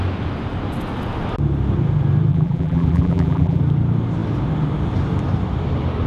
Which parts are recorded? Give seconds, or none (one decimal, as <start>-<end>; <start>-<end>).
0.0-2.3; 3.6-6.1